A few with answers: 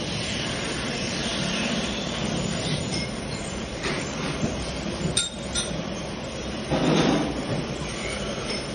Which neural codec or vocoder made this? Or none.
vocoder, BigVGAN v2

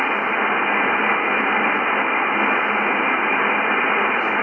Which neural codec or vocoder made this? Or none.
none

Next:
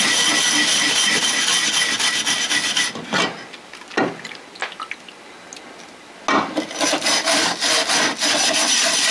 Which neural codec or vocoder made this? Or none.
none